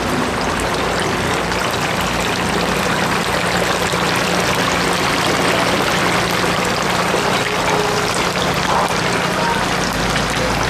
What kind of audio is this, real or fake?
real